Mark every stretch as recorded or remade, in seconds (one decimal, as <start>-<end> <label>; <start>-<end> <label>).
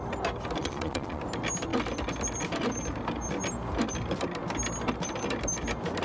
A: 0.0-0.6 recorded; 0.6-1.2 remade; 1.2-6.0 recorded